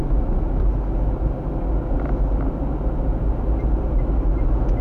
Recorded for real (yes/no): yes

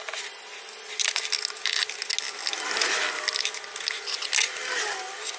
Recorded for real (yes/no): yes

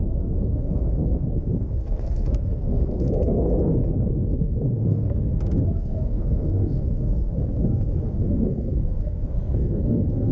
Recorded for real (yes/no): no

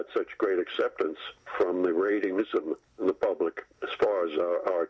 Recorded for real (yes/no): yes